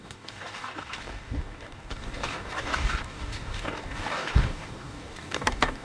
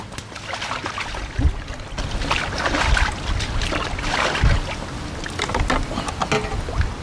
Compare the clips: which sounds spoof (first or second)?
first